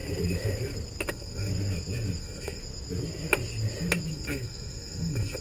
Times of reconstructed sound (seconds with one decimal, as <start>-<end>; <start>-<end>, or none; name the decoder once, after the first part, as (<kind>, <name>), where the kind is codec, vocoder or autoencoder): 1.1-1.5 (codec, SNAC); 2.2-2.6; 4.1-5.4